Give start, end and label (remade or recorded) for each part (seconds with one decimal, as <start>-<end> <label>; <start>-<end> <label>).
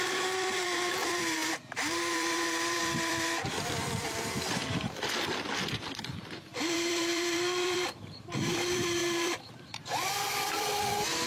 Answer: 0.0-11.3 remade